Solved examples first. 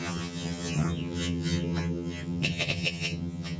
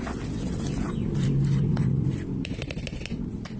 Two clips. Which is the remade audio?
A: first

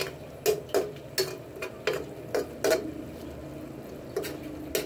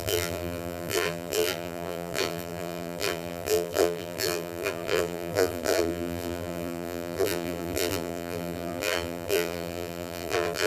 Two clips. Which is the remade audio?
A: second